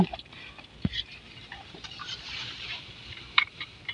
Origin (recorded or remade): remade